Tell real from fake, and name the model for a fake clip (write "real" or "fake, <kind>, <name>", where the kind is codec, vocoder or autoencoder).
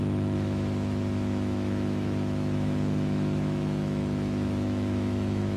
fake, autoencoder, DAC-VAE